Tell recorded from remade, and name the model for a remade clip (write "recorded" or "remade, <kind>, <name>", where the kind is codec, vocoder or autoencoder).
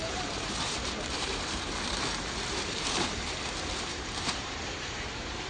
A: remade, vocoder, BigVGAN v2